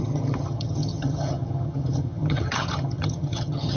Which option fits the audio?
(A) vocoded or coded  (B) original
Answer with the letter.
A